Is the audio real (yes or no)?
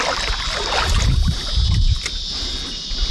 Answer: yes